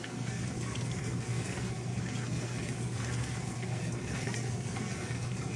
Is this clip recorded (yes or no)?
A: no